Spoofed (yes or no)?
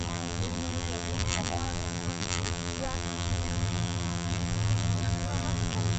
yes